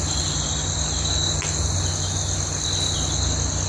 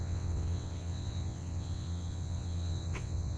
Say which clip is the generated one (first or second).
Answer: second